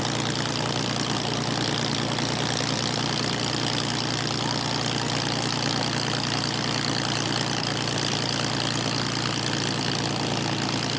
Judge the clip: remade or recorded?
recorded